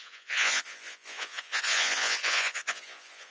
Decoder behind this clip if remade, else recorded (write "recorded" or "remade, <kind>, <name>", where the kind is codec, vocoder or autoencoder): remade, vocoder, Vocos